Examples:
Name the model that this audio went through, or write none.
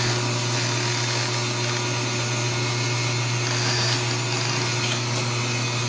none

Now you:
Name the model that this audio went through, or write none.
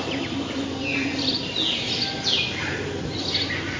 none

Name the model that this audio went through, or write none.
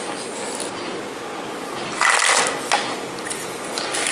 none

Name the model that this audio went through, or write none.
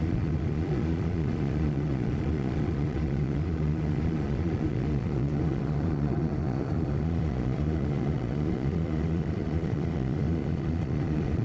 vocoder, Vocos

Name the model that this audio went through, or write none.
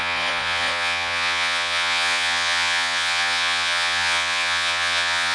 vocoder, Vocos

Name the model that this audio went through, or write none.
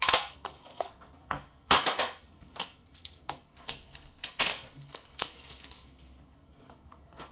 codec, SNAC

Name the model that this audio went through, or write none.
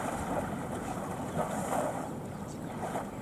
none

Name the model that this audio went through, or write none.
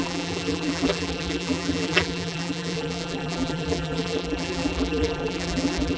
vocoder, BigVGAN v2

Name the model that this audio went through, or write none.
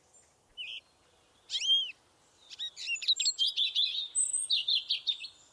none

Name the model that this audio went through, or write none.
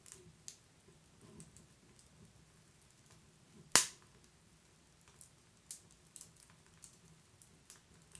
none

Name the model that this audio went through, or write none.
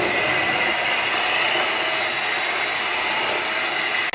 none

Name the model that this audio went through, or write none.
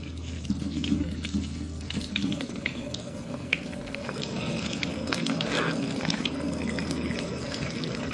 codec, SNAC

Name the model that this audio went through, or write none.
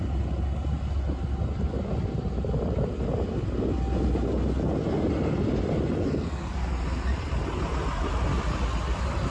none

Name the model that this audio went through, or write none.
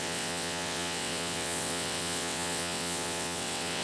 vocoder, WaveNeXt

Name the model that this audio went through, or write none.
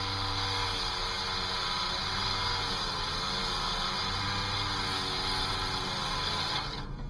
none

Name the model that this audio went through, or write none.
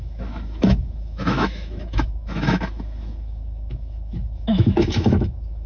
autoencoder, DAC-VAE